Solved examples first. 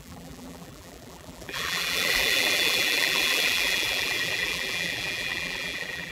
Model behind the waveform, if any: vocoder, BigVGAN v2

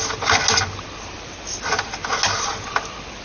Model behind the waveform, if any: none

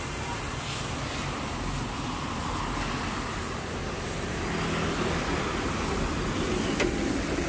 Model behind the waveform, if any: none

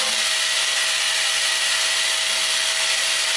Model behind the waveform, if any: none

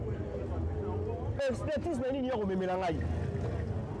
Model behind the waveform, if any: none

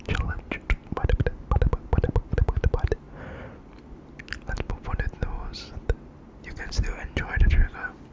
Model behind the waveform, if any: none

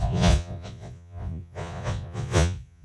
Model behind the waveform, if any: vocoder, Vocos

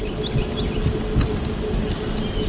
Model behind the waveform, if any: none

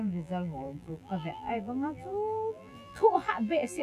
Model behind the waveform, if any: vocoder, BigVGAN v2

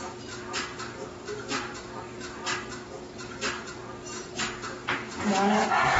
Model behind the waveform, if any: none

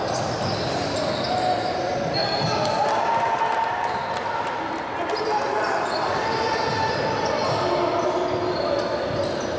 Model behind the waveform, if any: none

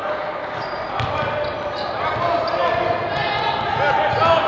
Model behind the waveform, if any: none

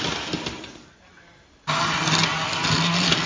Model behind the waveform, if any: none